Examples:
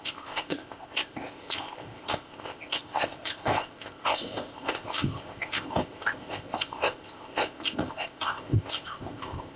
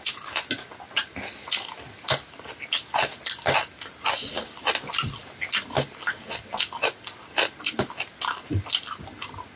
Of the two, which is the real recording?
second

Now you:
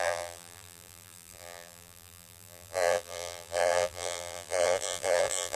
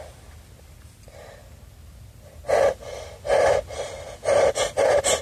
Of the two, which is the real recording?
second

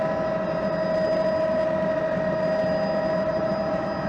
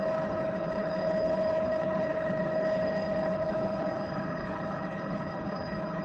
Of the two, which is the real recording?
first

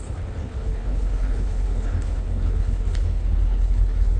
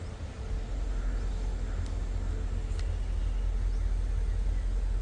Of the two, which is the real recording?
second